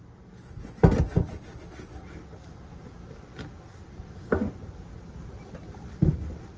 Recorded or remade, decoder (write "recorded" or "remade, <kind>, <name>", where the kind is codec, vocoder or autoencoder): recorded